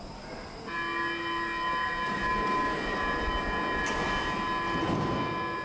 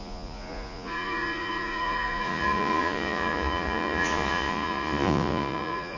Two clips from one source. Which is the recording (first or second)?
first